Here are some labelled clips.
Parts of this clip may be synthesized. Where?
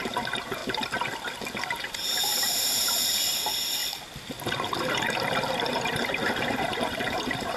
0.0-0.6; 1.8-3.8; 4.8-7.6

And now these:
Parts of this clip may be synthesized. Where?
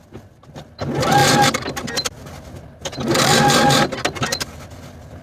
none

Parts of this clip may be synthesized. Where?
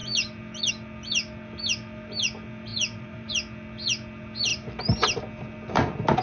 2.7-3.3; 4.5-5.2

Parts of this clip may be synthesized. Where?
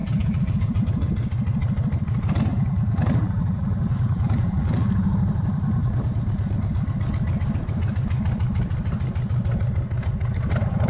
0.0-0.8; 2.5-4.9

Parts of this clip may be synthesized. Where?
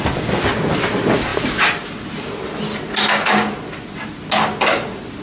none